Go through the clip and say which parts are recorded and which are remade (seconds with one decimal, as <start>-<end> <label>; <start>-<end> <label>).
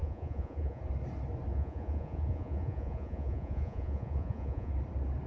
0.0-0.8 remade; 0.8-1.5 recorded; 1.5-4.7 remade; 4.7-5.3 recorded